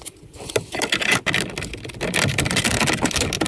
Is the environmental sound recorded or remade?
recorded